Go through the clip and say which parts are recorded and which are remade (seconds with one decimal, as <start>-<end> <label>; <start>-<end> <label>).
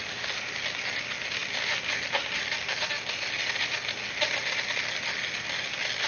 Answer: 0.0-6.1 recorded